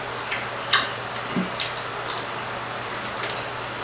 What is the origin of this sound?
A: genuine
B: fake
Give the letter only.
A